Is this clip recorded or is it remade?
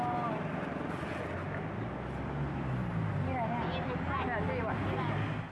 recorded